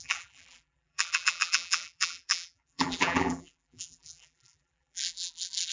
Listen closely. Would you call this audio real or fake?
fake